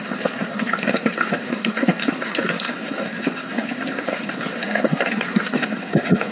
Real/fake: fake